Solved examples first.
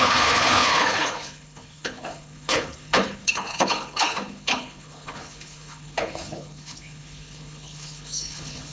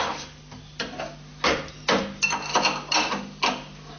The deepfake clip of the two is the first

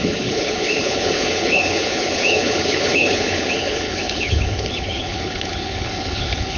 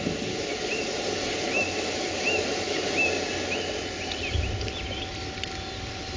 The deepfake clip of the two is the first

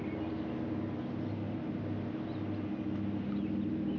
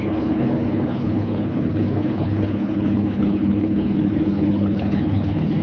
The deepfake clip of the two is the second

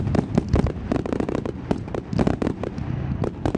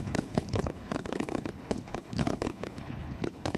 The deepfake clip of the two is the second